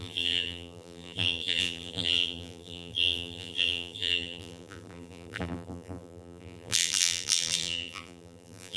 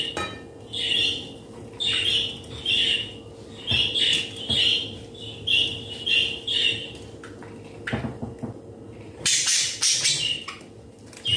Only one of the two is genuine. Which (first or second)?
second